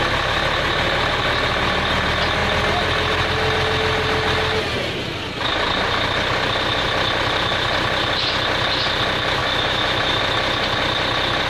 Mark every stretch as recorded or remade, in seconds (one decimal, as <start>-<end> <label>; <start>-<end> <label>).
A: 0.0-9.4 recorded; 9.4-10.2 remade; 10.2-11.5 recorded